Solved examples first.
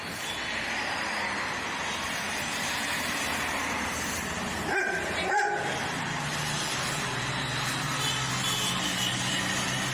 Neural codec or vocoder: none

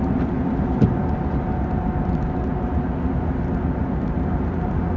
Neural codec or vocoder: none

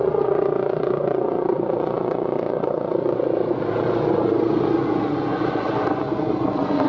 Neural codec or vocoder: vocoder, Vocos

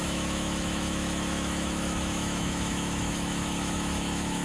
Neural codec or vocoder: autoencoder, DAC-VAE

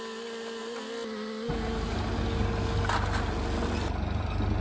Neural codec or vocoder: none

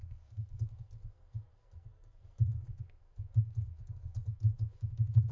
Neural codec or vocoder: codec, SNAC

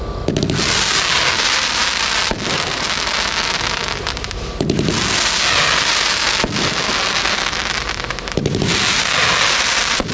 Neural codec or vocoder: none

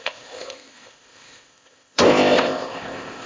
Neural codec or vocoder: codec, ZipCodec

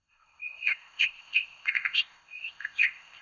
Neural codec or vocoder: codec, ZipCodec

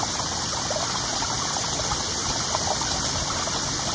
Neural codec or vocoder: none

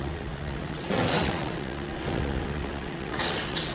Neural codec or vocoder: vocoder, WaveNeXt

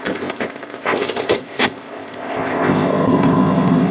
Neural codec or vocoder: codec, ZipCodec